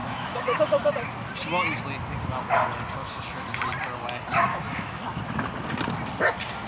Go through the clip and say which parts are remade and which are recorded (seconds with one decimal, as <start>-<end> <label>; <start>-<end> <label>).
0.0-0.9 remade; 0.9-3.0 recorded; 3.0-3.6 remade; 3.6-4.5 recorded; 4.5-5.2 remade; 5.2-6.7 recorded